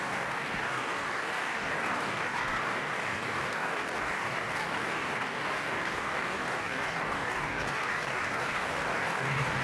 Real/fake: fake